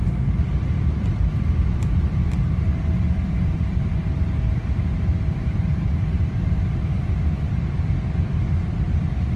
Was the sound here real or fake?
fake